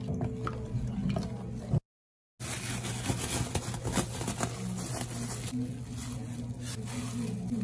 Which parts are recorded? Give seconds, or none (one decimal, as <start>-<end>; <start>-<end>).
0.0-7.6